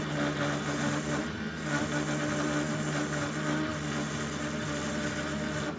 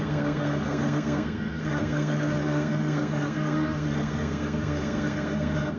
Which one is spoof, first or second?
second